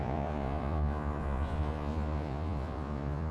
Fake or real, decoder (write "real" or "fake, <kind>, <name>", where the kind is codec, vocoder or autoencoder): fake, vocoder, Vocos